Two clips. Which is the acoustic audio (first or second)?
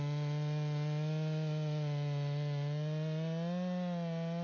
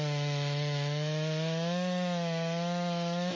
first